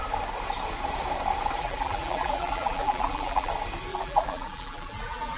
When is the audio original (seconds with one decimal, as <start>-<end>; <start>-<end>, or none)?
0.0-1.6; 3.5-3.9